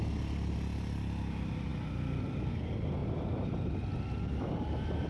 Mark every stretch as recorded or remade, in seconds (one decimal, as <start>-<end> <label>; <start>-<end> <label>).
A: 0.0-5.1 recorded